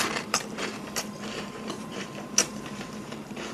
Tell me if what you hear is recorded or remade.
remade